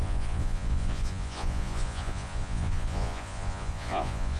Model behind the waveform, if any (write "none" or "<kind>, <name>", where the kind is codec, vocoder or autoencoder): vocoder, Vocos